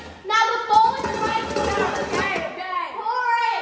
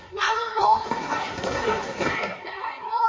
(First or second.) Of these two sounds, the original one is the first